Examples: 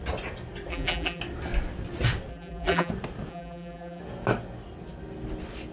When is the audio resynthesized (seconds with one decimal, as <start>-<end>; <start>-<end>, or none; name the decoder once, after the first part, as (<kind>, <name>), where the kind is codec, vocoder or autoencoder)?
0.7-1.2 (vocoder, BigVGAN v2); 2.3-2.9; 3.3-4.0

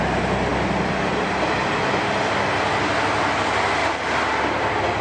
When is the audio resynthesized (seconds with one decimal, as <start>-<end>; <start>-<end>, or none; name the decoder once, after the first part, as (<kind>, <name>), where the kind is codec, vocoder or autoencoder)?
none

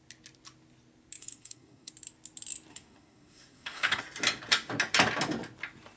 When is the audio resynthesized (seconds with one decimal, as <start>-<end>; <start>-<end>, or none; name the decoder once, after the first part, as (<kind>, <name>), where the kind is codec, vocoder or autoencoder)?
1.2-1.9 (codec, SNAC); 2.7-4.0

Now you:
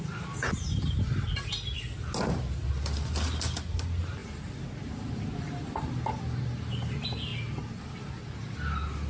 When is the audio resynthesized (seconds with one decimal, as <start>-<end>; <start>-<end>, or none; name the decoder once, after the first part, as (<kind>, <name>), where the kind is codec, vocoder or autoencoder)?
none

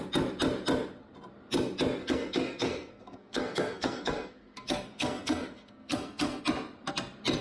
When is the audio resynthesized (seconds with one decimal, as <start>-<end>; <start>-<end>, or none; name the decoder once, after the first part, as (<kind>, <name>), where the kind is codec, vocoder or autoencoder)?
2.0-6.4 (codec, SNAC)